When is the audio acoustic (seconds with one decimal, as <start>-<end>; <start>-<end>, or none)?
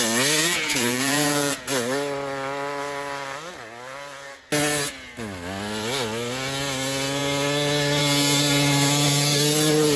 0.0-0.4; 1.6-10.0